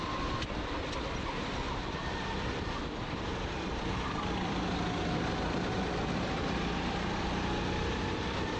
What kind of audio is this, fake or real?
fake